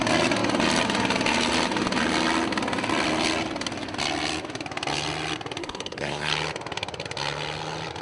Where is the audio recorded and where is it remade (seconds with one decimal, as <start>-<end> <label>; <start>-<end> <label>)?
0.0-5.6 recorded; 5.6-6.3 remade; 6.3-8.0 recorded